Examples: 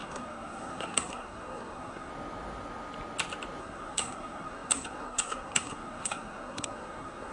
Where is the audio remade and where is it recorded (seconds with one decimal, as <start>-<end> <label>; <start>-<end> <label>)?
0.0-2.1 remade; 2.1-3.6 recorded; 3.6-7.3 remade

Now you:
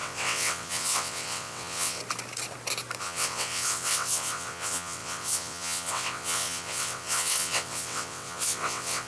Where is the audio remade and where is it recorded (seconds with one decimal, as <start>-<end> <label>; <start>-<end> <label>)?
0.0-2.0 remade; 2.0-3.0 recorded; 3.0-9.1 remade

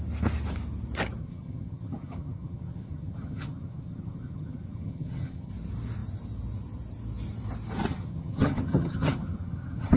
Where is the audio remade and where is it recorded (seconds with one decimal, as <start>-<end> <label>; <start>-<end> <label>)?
0.0-1.2 recorded; 1.2-5.5 remade; 5.5-7.9 recorded; 7.9-10.0 remade